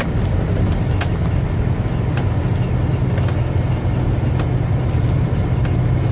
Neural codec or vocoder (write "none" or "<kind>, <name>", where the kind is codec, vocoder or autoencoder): none